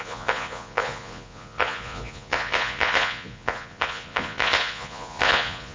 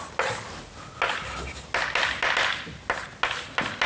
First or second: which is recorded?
second